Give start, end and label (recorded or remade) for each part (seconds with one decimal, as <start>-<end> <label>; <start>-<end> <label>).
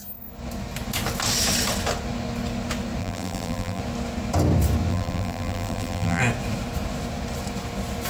0.0-3.0 recorded; 3.0-3.8 remade; 3.8-4.9 recorded; 4.9-6.2 remade; 6.2-8.1 recorded